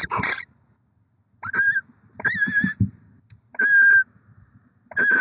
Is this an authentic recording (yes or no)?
yes